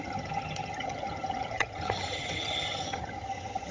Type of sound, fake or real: fake